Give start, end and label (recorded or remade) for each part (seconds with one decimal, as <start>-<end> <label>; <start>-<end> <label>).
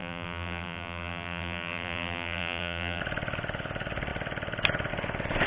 0.0-3.0 remade; 3.0-5.5 recorded